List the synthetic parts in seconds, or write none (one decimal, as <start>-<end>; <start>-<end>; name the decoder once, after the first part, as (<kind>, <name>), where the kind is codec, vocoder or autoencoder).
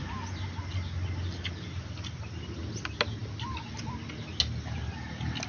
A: none